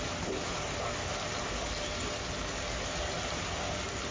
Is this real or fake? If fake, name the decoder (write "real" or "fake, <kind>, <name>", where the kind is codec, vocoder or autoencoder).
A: real